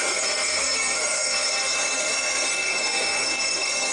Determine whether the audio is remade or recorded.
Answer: remade